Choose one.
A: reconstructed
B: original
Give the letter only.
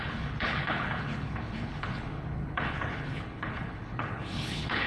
A